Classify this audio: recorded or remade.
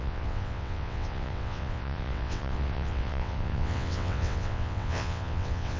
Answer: remade